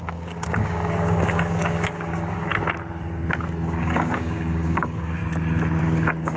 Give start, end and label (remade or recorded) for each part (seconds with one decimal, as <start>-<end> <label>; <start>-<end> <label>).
0.0-2.5 remade; 2.5-3.8 recorded; 3.8-5.2 remade; 5.2-5.8 recorded; 5.8-6.4 remade